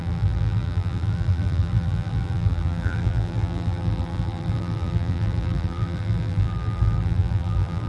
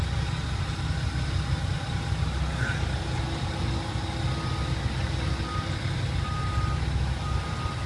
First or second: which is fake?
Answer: first